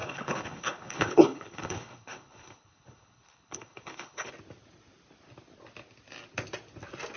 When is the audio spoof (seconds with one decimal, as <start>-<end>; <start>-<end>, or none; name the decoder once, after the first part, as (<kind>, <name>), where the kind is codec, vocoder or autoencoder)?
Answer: 0.0-4.3 (codec, HILCodec)